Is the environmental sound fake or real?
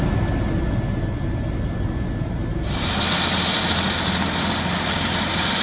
real